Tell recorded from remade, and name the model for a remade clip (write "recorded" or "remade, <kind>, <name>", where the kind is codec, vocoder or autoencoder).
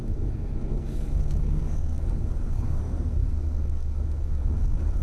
remade, codec, SNAC